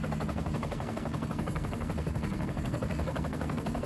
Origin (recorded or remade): remade